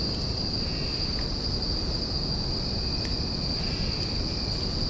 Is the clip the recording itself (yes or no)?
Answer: yes